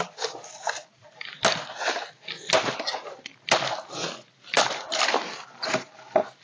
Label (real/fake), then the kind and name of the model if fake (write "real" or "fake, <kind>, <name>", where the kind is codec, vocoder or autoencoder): real